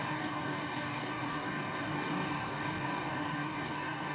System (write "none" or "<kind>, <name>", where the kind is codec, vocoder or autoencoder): codec, DAC